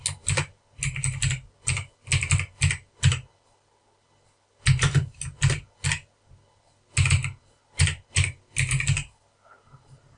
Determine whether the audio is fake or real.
real